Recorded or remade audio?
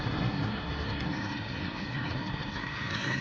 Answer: remade